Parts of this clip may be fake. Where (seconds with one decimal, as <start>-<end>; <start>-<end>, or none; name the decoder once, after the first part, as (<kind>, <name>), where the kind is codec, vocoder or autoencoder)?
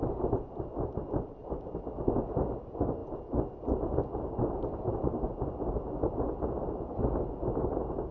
none